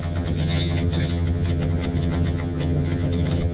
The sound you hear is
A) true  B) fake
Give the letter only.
B